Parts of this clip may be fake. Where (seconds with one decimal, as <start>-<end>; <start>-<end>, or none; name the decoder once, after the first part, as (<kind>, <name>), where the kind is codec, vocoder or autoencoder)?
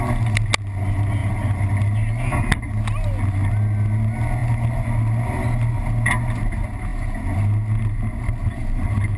8.5-9.2 (vocoder, BigVGAN v2)